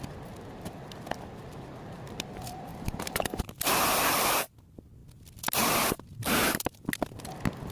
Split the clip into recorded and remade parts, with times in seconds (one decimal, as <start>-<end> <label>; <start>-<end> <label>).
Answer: 0.0-2.7 recorded; 2.7-3.5 remade; 3.5-7.7 recorded